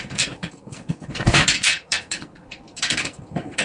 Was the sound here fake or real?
fake